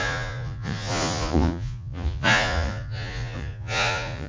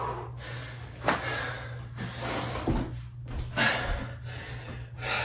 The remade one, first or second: first